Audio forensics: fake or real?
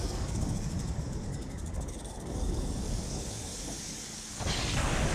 fake